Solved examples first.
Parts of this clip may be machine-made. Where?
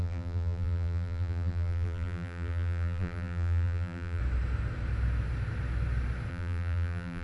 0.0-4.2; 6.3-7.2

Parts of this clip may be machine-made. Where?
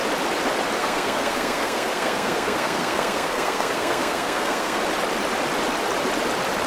0.8-4.8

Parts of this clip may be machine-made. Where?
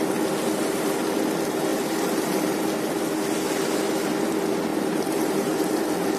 1.7-2.9; 4.7-5.7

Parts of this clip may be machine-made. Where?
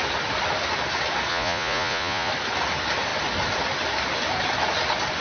1.3-2.3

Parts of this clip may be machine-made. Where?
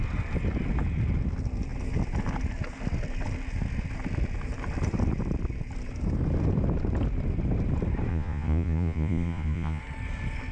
8.1-9.8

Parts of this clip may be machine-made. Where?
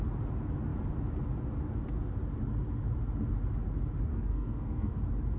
4.1-5.0